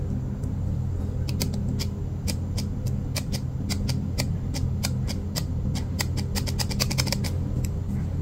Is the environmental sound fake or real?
real